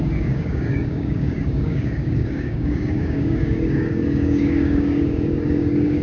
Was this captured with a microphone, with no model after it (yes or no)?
no